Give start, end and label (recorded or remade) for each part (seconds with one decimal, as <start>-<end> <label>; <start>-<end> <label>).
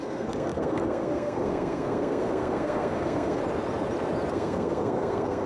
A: 0.0-3.4 remade; 3.4-4.3 recorded; 4.3-5.5 remade